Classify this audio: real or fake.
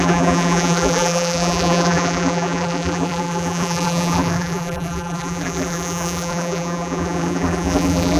fake